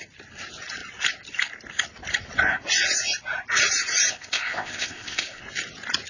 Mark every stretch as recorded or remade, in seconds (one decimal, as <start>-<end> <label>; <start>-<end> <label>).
0.0-4.1 recorded; 4.1-5.4 remade; 5.4-6.1 recorded